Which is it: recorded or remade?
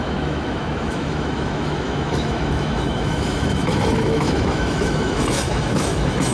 remade